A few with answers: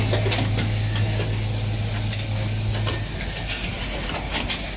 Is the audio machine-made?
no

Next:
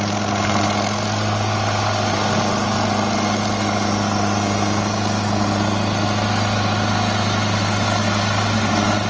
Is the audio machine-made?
no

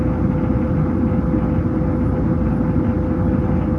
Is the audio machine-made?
no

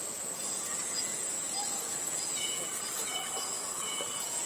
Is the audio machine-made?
yes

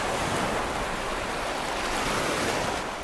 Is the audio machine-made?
no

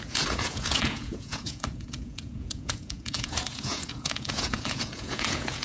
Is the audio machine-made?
yes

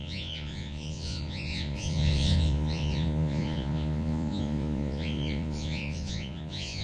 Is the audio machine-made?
yes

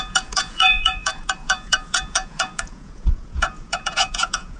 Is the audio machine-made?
yes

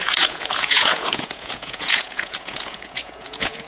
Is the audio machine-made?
yes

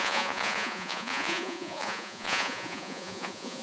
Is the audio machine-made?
yes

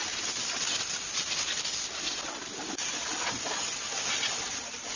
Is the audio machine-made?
no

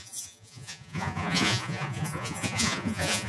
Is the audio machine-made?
yes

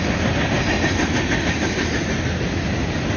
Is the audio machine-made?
no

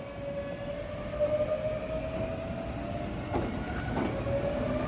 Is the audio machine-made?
no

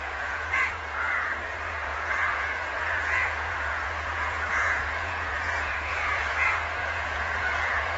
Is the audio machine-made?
yes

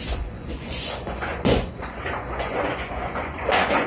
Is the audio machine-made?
yes